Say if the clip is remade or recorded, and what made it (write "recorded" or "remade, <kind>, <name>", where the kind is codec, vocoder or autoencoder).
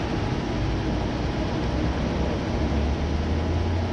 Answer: recorded